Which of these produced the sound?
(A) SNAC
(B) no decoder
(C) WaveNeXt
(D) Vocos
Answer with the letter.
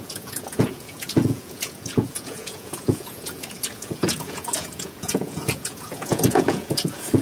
D